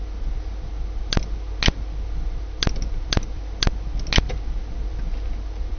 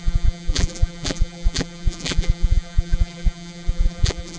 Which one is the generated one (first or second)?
second